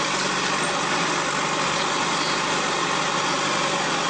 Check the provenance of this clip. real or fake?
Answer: real